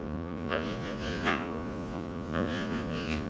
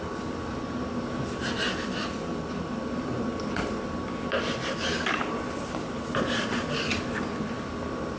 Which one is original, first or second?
second